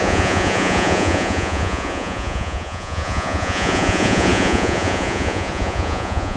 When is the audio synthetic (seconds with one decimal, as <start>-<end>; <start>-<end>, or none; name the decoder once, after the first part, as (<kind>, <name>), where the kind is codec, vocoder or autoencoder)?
0.0-6.4 (vocoder, Vocos)